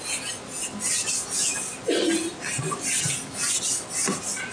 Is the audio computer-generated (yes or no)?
no